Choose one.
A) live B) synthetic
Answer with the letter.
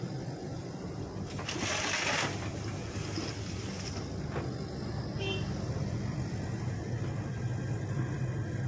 A